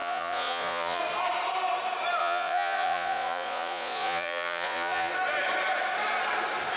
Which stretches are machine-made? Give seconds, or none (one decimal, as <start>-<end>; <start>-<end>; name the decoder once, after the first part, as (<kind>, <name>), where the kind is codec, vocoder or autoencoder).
0.0-1.0 (vocoder, Vocos); 2.2-5.1